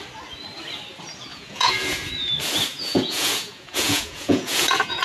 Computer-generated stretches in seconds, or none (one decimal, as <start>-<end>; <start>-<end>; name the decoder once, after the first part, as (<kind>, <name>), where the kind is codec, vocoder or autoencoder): 1.3-2.1 (vocoder, Vocos); 2.7-5.0